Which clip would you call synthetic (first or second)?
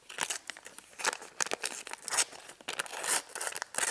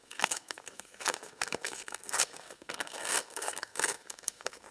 second